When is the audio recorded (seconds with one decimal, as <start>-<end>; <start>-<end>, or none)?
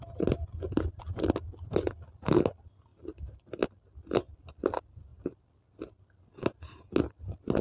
0.0-7.6